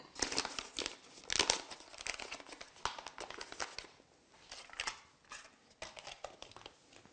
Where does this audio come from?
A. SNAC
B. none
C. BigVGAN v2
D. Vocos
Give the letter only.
B